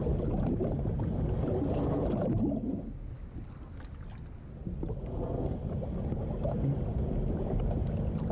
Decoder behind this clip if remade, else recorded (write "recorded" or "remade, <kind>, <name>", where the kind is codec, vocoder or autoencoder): recorded